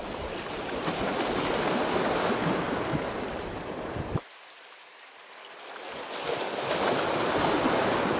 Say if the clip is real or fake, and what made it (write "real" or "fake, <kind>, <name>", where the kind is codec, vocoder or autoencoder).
real